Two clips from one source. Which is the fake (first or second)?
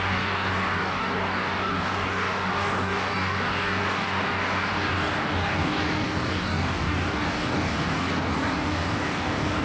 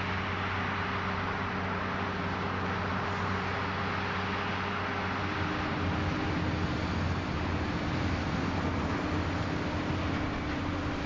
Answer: first